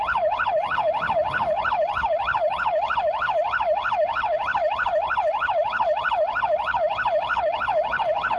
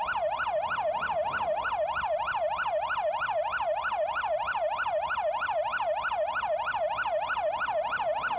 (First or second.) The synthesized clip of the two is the first